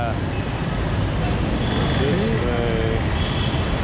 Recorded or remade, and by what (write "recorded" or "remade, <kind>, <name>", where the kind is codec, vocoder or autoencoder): recorded